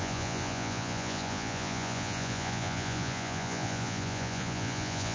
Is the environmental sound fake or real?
fake